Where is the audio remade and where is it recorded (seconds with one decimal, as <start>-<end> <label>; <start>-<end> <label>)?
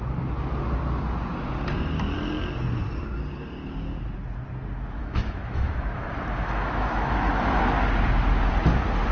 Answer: 0.0-5.0 recorded; 5.0-7.6 remade; 7.6-9.1 recorded